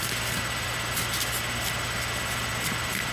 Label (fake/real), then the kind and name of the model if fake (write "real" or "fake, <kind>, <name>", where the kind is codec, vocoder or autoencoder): real